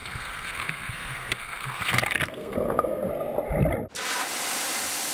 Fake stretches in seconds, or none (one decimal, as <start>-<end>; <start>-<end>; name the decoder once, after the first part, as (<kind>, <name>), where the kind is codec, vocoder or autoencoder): 0.0-3.1 (codec, SNAC)